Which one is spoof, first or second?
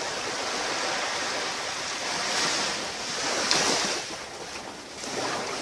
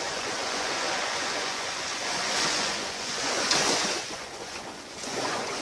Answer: second